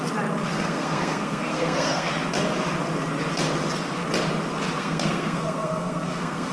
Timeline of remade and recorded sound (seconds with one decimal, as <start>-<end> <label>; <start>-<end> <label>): 0.0-0.5 recorded; 0.5-2.1 remade; 2.1-4.8 recorded; 4.8-6.5 remade